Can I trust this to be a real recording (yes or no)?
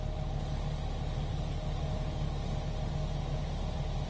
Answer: yes